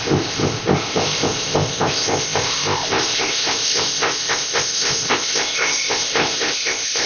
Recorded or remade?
remade